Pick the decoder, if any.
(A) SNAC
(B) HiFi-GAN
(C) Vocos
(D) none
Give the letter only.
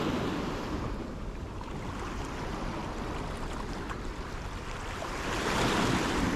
D